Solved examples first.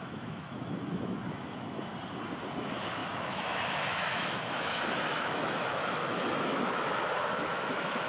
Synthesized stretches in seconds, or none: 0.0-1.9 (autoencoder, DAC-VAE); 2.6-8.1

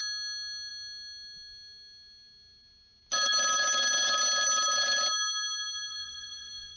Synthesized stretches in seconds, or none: 5.9-6.8 (vocoder, Vocos)

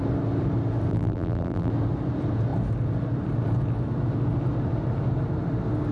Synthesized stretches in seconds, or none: 0.9-1.7 (vocoder, BigVGAN v2)

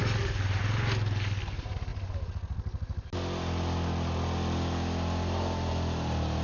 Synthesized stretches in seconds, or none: none

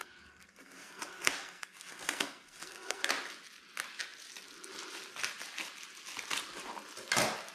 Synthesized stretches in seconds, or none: 0.0-3.1 (codec, SNAC)

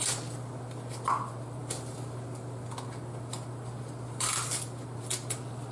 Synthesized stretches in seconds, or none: none

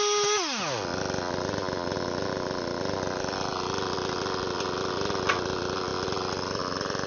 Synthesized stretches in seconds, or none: none

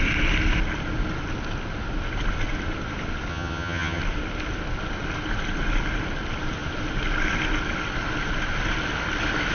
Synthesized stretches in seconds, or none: 3.3-4.0 (vocoder, HiFi-GAN)